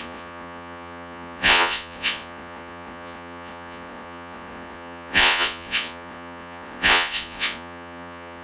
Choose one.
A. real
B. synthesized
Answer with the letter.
B